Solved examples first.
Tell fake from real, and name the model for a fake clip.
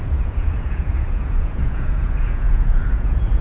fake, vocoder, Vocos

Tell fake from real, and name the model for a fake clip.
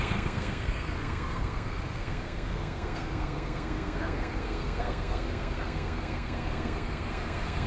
fake, codec, SNAC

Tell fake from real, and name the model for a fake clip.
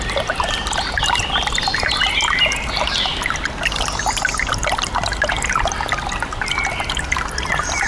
real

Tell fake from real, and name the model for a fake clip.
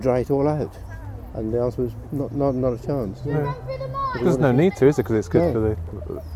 real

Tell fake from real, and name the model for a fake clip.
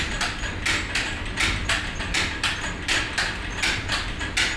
real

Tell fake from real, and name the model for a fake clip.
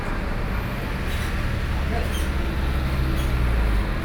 real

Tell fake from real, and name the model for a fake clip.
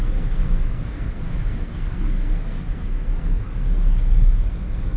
fake, codec, SNAC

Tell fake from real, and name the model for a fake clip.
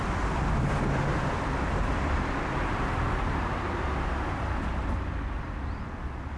real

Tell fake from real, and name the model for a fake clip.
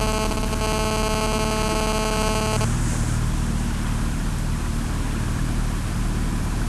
real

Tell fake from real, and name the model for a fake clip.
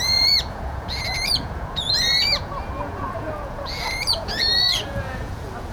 fake, vocoder, Vocos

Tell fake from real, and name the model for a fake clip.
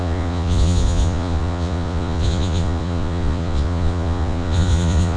fake, vocoder, Vocos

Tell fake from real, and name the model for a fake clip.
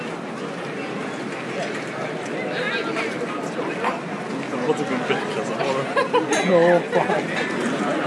real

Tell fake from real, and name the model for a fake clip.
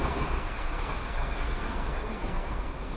fake, codec, SNAC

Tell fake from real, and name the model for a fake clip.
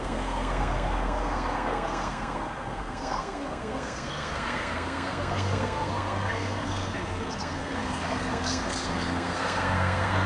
fake, codec, SNAC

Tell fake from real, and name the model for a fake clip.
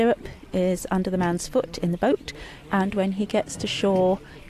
real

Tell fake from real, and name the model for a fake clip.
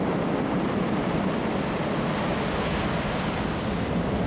real